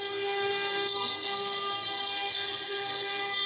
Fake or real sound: fake